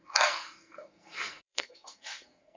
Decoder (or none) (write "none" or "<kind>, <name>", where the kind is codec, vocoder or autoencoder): codec, SNAC